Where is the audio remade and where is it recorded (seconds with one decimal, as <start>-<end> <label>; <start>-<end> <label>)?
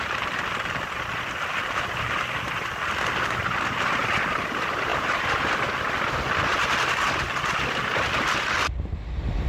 0.0-4.0 recorded; 4.0-4.5 remade; 4.5-4.9 recorded; 4.9-5.5 remade; 5.5-9.5 recorded